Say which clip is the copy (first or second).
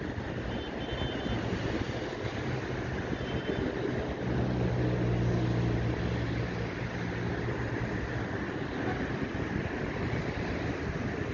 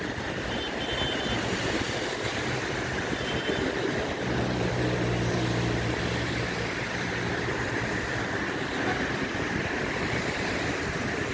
second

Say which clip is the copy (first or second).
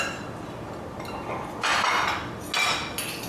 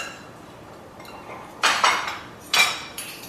second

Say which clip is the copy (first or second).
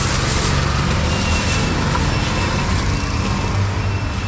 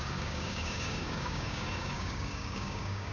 second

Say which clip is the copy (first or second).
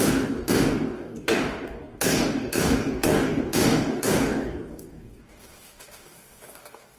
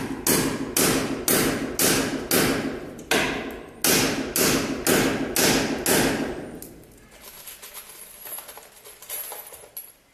first